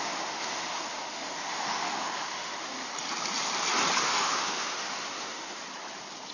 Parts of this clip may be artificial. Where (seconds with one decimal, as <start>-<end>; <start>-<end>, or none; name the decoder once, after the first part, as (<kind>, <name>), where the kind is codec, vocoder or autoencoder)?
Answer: 0.0-2.9 (autoencoder, DAC-VAE); 4.0-5.6